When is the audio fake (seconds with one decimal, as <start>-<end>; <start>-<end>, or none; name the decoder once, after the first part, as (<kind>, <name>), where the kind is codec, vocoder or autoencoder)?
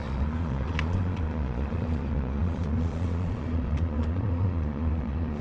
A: 0.0-5.4 (vocoder, Vocos)